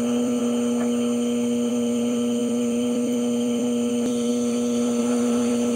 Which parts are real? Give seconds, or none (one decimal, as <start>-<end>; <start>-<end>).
0.4-1.7